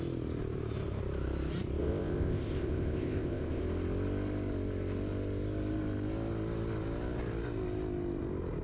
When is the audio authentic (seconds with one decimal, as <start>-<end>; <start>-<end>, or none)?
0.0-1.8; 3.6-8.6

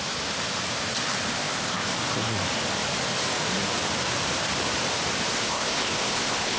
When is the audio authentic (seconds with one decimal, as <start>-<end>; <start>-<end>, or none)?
0.0-1.3; 1.9-5.3

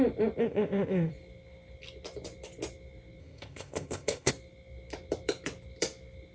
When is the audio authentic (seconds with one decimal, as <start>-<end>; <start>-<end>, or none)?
0.0-0.4; 1.1-3.2; 4.3-6.3

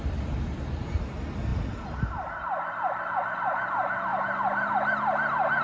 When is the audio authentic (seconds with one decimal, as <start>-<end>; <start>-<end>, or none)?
0.0-5.6

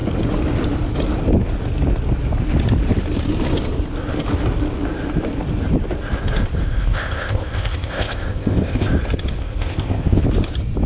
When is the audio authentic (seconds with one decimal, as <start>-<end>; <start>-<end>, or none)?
0.0-6.6; 8.9-9.4; 10.2-10.9

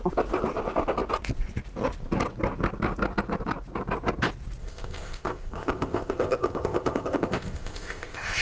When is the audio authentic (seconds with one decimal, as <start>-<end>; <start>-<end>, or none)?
0.0-4.6

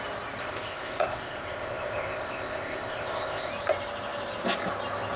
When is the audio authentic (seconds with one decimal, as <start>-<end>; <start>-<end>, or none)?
0.0-0.4; 3.5-5.2

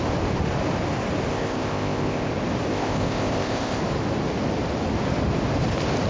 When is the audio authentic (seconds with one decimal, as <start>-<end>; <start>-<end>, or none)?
0.0-1.3; 2.3-2.7; 3.8-6.1